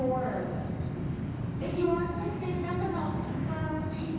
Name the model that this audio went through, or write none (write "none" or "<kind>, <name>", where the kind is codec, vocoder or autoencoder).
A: codec, DAC